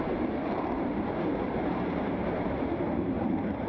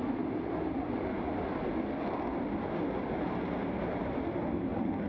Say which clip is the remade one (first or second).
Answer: first